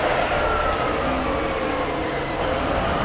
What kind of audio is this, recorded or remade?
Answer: remade